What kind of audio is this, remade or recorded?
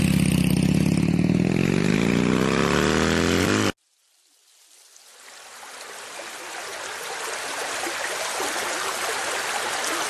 recorded